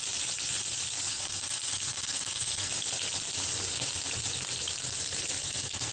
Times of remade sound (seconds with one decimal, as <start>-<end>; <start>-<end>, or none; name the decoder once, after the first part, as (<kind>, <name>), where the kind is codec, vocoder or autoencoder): 1.1-2.7 (codec, SNAC); 5.4-5.9